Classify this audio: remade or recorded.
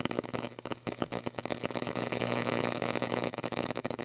remade